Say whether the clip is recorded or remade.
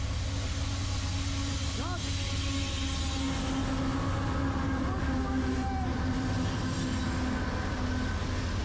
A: recorded